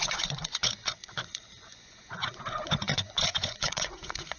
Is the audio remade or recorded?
remade